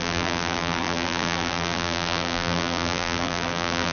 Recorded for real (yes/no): no